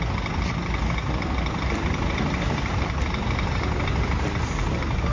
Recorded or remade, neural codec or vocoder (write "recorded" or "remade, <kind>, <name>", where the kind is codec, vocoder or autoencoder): remade, vocoder, BigVGAN v2